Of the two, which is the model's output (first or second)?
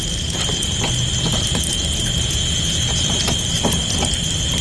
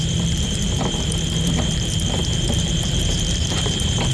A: second